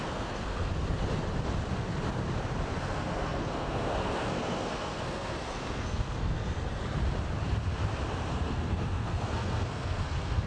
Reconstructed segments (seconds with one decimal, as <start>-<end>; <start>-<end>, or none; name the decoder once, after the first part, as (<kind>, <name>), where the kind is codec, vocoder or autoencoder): 0.0-0.7 (codec, SNAC); 2.8-6.8; 8.3-10.5